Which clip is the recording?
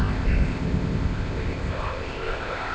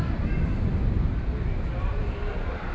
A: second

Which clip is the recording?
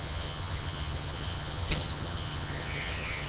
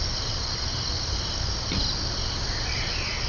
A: second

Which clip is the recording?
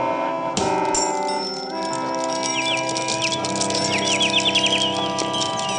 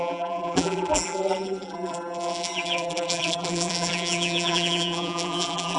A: first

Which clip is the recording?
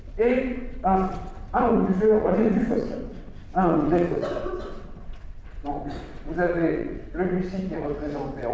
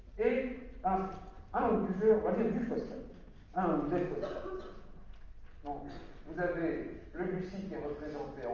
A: second